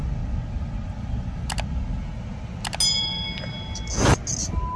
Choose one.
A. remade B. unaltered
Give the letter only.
B